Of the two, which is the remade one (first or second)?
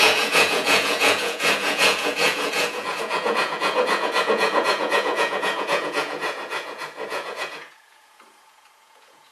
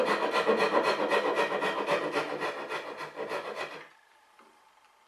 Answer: first